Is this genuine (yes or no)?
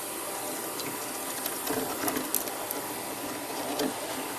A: yes